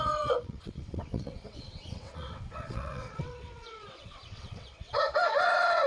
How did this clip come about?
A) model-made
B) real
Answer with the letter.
A